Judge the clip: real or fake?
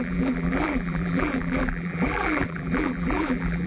fake